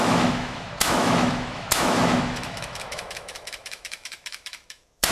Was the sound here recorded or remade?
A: remade